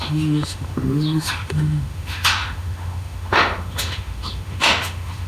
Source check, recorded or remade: remade